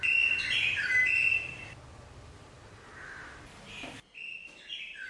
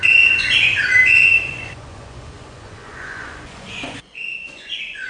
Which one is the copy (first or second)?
second